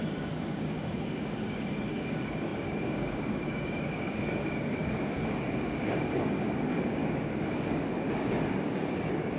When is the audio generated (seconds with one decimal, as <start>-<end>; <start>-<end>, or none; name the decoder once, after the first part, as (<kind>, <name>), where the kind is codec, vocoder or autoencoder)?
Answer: 0.0-9.4 (codec, DAC)